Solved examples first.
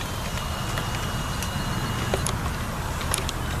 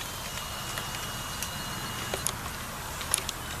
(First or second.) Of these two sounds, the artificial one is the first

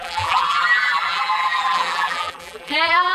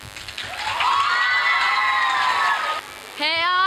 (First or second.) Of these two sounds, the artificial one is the first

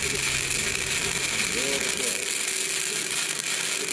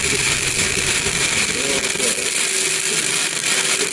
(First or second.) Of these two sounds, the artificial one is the second